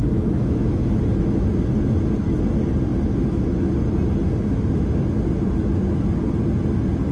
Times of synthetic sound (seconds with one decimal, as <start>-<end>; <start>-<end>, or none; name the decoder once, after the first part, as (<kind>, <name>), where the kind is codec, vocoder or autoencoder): 0.0-1.0 (autoencoder, DAC-VAE)